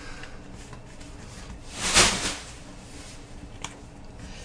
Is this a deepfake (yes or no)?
no